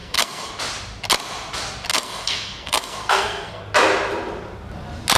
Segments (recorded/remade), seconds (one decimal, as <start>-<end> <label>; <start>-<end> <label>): 0.0-0.5 remade; 0.5-1.9 recorded; 1.9-3.6 remade; 3.6-5.2 recorded